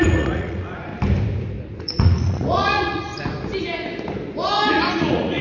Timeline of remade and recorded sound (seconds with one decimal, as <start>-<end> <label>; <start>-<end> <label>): 0.0-0.9 remade; 0.9-1.8 recorded; 1.8-3.1 remade; 3.1-4.7 recorded; 4.7-5.4 remade